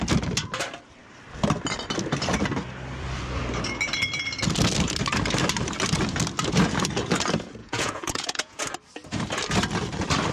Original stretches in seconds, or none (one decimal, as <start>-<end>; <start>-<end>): 0.0-7.6; 8.6-10.3